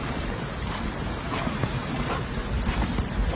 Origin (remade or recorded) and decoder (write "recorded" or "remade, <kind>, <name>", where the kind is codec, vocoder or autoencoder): recorded